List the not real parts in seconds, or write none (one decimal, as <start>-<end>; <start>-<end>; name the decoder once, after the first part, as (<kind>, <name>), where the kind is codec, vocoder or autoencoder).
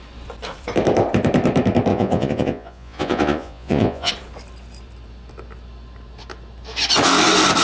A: 1.9-4.1 (vocoder, Vocos)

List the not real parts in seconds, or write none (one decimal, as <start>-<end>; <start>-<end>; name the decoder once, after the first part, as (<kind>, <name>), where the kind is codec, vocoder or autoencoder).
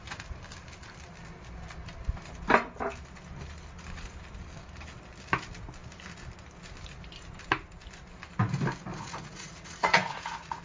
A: 8.9-10.6 (vocoder, Vocos)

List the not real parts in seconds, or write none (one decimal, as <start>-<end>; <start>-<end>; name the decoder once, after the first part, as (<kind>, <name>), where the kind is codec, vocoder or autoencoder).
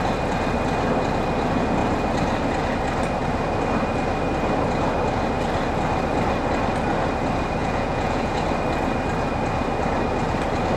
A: 7.6-8.4 (vocoder, Vocos)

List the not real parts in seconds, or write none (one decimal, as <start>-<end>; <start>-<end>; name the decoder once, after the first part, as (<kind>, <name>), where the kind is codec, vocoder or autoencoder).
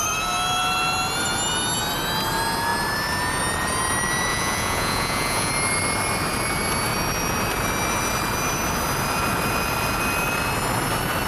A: 4.3-5.5 (vocoder, Vocos)